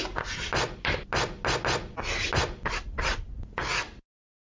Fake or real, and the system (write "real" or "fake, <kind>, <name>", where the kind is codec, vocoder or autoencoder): real